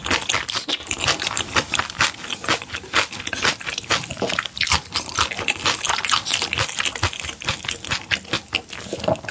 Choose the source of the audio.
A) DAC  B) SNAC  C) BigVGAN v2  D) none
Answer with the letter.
D